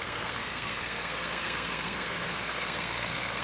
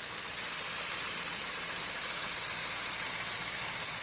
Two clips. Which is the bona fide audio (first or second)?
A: second